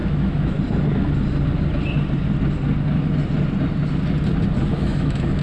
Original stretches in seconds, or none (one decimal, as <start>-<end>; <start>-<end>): 0.5-4.7